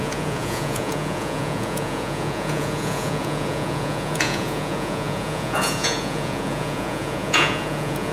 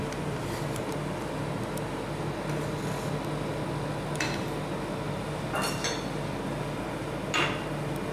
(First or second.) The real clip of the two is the second